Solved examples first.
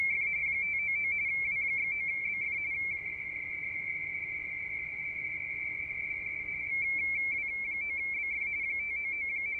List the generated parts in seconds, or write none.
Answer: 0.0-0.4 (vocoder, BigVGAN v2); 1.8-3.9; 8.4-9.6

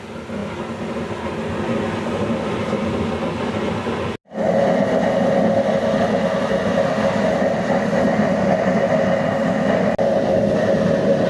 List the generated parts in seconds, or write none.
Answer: none